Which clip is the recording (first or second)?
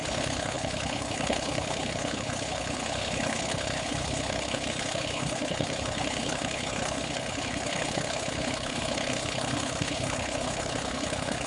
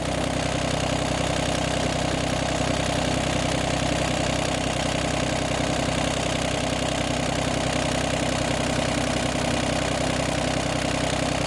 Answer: second